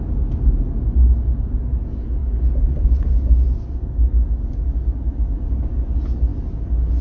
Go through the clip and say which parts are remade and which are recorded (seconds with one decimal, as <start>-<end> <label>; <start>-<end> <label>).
0.0-7.0 recorded